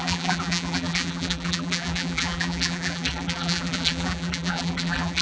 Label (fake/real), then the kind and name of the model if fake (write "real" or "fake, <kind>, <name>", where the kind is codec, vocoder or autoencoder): fake, vocoder, BigVGAN v2